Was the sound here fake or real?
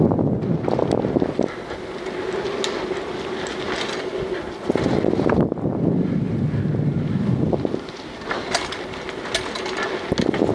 real